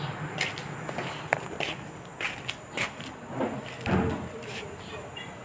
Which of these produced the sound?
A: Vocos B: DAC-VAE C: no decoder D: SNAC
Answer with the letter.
C